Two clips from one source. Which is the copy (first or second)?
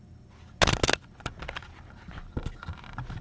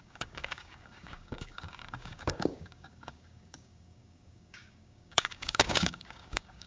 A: second